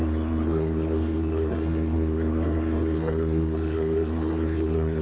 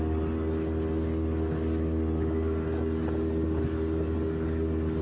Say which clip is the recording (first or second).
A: second